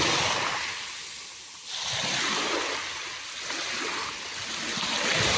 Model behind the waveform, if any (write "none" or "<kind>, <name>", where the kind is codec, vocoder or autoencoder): none